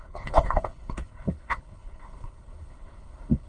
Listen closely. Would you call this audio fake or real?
fake